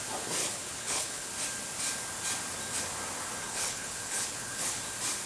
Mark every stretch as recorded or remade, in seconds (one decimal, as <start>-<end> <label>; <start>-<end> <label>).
0.0-0.4 recorded; 0.4-1.3 remade; 1.3-3.4 recorded; 3.4-4.8 remade; 4.8-5.3 recorded